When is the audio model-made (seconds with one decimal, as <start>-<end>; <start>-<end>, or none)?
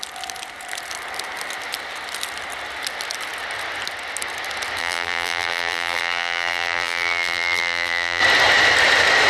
4.8-8.2